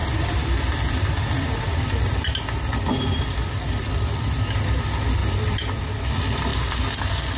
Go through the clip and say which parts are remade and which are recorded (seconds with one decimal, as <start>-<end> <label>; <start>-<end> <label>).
0.0-4.4 remade; 4.4-5.2 recorded; 5.2-6.1 remade; 6.1-7.4 recorded

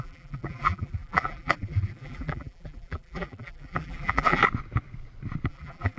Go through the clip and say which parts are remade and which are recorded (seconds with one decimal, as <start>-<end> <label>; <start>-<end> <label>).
0.0-4.4 remade; 4.4-5.5 recorded; 5.5-6.0 remade